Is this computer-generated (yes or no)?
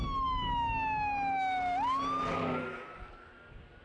no